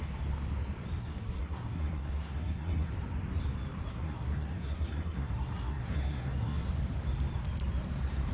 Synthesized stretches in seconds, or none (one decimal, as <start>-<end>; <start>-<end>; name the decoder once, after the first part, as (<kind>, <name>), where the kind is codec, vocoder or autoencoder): 1.0-2.9 (codec, SNAC); 3.9-6.7

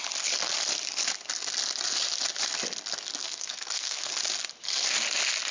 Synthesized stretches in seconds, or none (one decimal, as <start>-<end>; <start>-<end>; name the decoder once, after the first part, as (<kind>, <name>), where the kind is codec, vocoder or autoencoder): 3.2-4.1 (codec, SNAC)

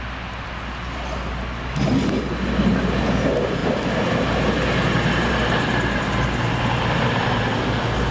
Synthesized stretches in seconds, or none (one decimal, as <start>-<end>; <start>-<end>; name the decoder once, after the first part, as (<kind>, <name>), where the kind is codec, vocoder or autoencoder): none

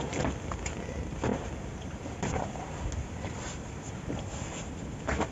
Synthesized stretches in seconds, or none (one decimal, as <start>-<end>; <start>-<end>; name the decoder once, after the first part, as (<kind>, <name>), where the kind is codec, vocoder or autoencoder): none

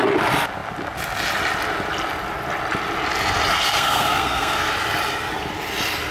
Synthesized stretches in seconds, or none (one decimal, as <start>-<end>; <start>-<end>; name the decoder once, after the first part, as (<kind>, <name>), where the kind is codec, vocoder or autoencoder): 3.7-4.7 (codec, SNAC)

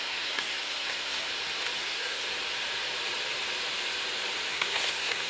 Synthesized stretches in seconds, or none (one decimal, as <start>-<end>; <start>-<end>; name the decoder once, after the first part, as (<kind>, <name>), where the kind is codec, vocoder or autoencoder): 0.0-1.3 (codec, SNAC); 1.8-2.2; 4.5-5.3

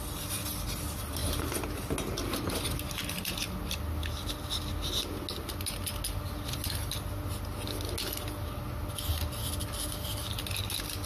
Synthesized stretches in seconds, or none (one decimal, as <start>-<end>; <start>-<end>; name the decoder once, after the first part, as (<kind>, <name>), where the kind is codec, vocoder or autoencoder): none

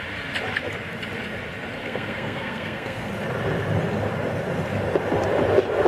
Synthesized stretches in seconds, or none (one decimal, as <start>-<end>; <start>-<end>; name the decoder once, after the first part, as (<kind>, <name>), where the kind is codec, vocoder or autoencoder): 1.8-3.1 (codec, SNAC)